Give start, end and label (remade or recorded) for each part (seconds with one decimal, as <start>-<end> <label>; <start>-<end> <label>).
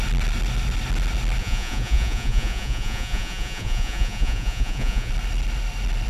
0.0-1.4 recorded; 1.4-5.1 remade; 5.1-6.1 recorded